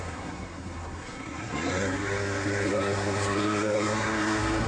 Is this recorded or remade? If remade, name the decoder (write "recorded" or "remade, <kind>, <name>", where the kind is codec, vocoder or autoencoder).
remade, codec, SNAC